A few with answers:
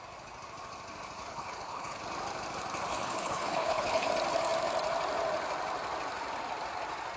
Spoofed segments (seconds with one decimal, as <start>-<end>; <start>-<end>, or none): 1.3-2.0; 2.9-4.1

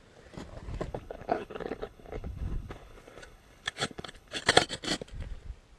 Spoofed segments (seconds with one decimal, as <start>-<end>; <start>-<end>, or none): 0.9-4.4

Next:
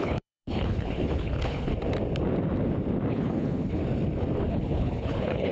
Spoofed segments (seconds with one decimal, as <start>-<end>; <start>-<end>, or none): 0.0-1.7; 3.1-3.8; 4.5-5.5